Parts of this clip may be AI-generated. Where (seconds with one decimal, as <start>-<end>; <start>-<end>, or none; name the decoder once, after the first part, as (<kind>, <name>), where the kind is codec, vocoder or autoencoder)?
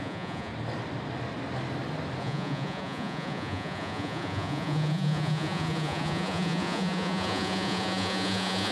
0.0-0.5 (vocoder, Vocos); 2.2-8.7